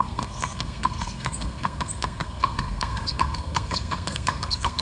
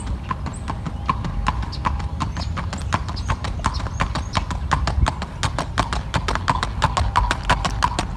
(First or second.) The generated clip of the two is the first